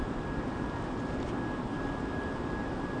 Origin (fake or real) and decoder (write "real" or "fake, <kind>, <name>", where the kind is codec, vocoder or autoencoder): real